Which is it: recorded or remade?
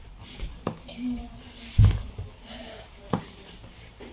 remade